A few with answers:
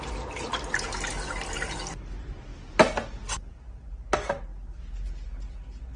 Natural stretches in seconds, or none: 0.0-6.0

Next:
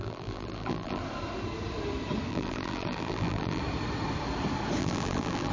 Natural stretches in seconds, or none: 1.0-2.3; 3.6-4.8

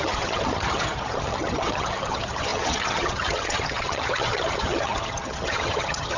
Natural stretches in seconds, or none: none